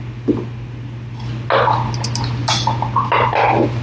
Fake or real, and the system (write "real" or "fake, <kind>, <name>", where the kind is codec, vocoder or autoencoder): real